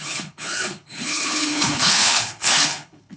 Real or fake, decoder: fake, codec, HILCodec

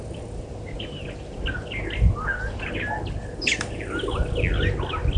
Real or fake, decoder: real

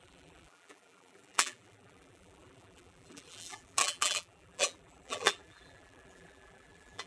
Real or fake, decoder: fake, vocoder, BigVGAN v2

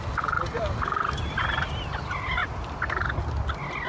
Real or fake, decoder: real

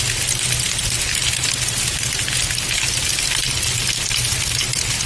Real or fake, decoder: real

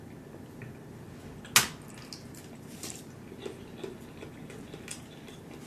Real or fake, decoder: real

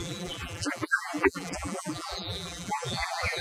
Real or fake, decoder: fake, vocoder, BigVGAN v2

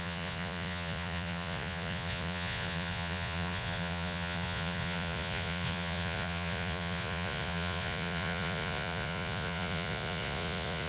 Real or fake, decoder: fake, vocoder, Vocos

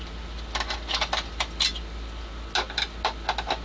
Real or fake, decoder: real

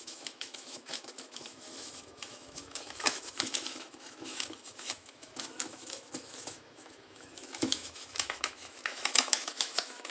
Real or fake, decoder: fake, autoencoder, DAC-VAE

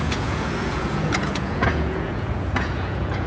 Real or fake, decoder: fake, vocoder, Vocos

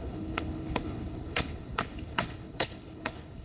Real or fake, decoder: fake, codec, HILCodec